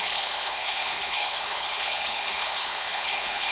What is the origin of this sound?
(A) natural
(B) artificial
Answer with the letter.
B